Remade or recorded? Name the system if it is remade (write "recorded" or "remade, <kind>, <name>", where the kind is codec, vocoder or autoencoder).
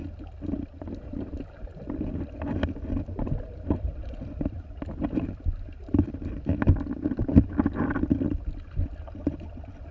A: remade, vocoder, BigVGAN v2